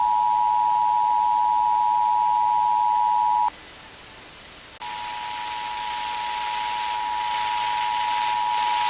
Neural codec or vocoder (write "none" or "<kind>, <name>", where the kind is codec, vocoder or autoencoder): none